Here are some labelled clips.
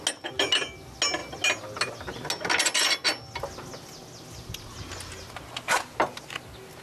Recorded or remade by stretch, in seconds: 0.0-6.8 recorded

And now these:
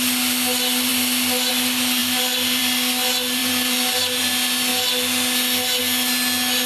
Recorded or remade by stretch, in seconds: 0.0-2.0 recorded; 2.0-2.6 remade; 2.6-3.4 recorded; 3.4-4.2 remade; 4.2-6.7 recorded